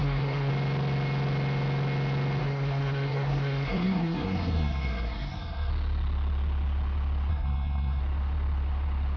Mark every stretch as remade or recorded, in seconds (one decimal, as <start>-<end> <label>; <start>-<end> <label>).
0.0-0.5 remade; 0.5-2.4 recorded; 2.4-5.7 remade; 5.7-7.3 recorded; 7.3-8.0 remade; 8.0-9.2 recorded